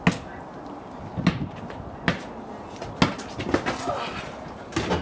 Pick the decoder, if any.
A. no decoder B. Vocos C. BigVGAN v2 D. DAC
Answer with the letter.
A